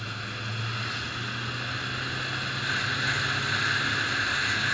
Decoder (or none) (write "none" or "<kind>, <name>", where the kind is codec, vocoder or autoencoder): none